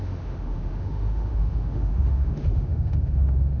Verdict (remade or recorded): remade